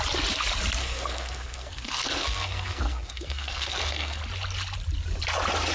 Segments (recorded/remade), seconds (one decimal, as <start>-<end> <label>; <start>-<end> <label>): 0.0-0.8 recorded; 0.8-4.2 remade; 4.2-5.7 recorded

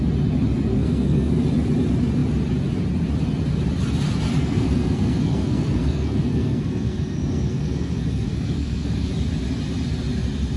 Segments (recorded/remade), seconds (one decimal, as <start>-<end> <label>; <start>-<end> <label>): 0.0-0.7 recorded; 0.7-1.3 remade; 1.3-4.4 recorded; 4.4-9.1 remade; 9.1-10.6 recorded

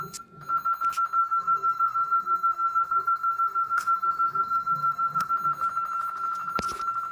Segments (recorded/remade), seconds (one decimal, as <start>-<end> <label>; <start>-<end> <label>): 0.0-1.2 recorded; 1.2-5.3 remade; 5.3-7.1 recorded

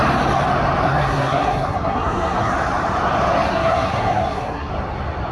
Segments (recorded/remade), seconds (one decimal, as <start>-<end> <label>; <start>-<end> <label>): 0.0-0.8 recorded; 0.8-2.5 remade; 2.5-3.5 recorded; 3.5-4.7 remade; 4.7-5.3 recorded

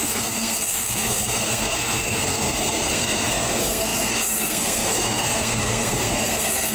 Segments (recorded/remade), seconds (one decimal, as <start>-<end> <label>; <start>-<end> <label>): 0.0-6.7 remade

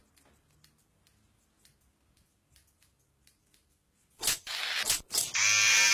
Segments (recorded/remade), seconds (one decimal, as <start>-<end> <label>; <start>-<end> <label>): 0.0-5.9 recorded

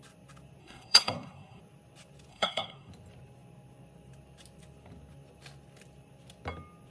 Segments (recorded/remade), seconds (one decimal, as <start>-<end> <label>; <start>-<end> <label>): 0.0-0.6 recorded; 0.6-1.6 remade; 1.6-2.3 recorded; 2.3-2.9 remade; 2.9-6.9 recorded